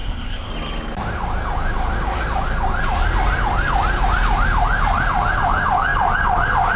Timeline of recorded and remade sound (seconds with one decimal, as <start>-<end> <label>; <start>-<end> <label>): 0.0-0.5 remade; 0.5-6.8 recorded